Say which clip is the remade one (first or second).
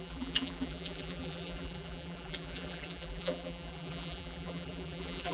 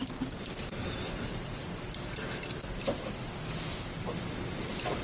first